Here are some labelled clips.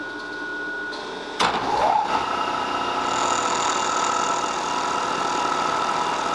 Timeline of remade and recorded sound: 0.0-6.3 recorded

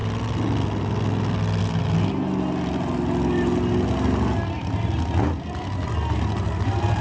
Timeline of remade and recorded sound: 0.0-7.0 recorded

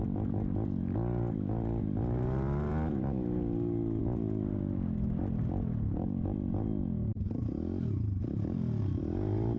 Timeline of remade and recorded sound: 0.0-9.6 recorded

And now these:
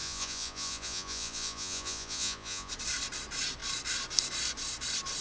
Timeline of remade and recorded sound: 0.0-2.7 remade; 2.7-5.2 recorded

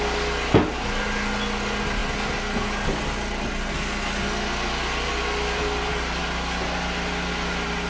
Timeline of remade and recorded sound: 0.0-7.9 recorded

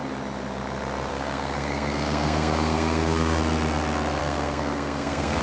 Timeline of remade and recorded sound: 0.0-1.1 recorded; 1.1-3.4 remade; 3.4-4.2 recorded; 4.2-5.4 remade